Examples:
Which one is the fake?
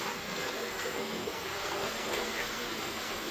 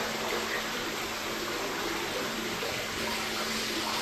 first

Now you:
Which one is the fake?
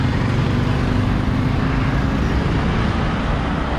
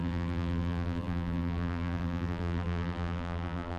second